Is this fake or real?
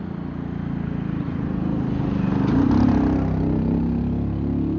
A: real